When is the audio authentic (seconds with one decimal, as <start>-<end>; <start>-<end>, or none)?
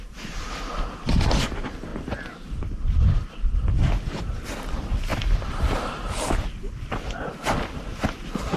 0.0-5.1; 6.1-8.6